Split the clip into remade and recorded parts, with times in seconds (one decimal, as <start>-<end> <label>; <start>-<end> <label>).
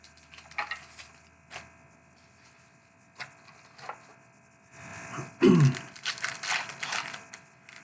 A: 0.0-7.8 recorded